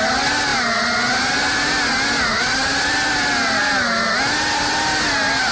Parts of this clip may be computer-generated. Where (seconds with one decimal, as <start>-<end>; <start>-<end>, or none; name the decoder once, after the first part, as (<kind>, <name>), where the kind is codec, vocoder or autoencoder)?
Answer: none